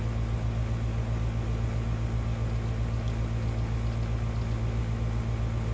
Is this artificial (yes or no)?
no